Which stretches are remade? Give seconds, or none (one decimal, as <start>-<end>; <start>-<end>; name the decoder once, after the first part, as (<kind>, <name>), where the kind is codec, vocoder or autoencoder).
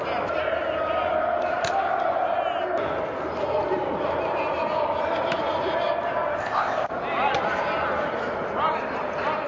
6.4-6.9 (codec, ZipCodec)